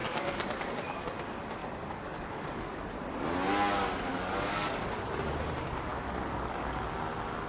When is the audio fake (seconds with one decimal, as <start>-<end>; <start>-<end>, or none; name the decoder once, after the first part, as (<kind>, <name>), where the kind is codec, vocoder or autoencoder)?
0.0-1.0 (codec, DAC); 1.6-2.8; 4.1-4.8; 5.9-6.8